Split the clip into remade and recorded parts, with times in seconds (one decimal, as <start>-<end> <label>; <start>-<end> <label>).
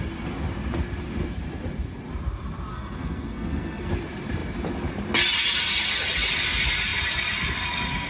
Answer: 0.0-2.7 recorded; 2.7-3.9 remade; 3.9-8.1 recorded